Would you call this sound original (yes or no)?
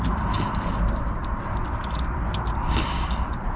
yes